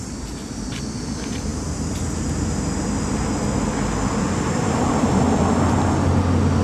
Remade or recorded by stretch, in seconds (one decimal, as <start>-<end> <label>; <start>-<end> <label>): 0.0-6.6 recorded